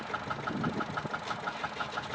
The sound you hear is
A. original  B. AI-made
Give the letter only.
A